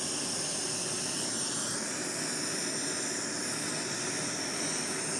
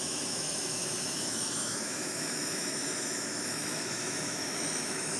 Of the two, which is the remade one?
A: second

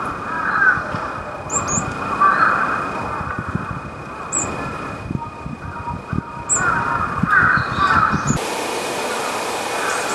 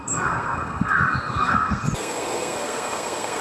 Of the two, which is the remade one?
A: second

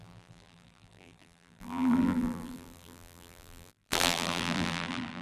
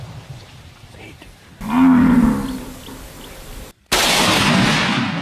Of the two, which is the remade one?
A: first